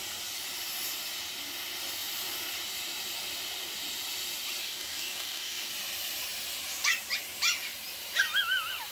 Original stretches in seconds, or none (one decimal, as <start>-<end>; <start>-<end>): 0.0-4.6; 5.7-8.9